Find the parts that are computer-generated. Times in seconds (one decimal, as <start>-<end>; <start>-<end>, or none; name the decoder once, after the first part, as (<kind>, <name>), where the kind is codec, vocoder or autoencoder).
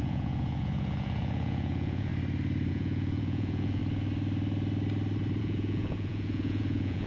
0.0-2.1 (vocoder, Vocos); 2.7-3.8; 5.4-7.1